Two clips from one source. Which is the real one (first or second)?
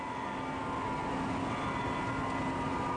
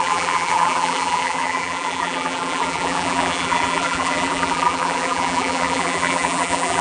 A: first